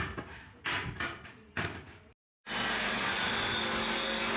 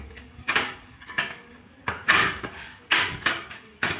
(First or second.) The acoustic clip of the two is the first